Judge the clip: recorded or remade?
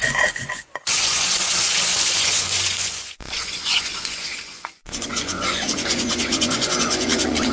remade